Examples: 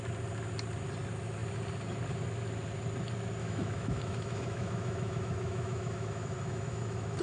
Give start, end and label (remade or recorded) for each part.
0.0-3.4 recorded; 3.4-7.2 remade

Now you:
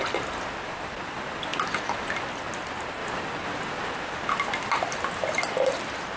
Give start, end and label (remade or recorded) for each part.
0.0-6.2 recorded

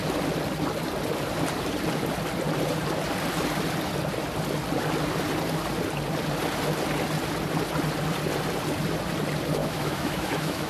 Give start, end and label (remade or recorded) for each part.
0.0-9.6 recorded; 9.6-10.7 remade

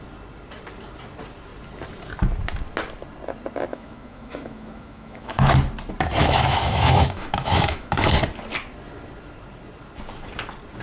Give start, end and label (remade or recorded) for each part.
0.0-3.7 recorded; 3.7-5.5 remade; 5.5-6.2 recorded; 6.2-8.1 remade; 8.1-10.8 recorded

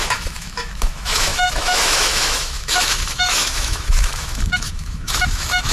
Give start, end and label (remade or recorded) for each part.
0.0-5.7 remade

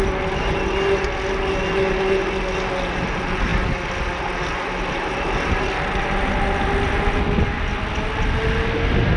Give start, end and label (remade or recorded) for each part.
0.0-9.2 recorded